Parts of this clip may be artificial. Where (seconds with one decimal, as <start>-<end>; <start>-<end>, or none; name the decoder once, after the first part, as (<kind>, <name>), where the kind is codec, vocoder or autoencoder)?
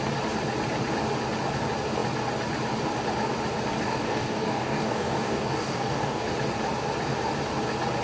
3.8-6.2 (codec, DAC)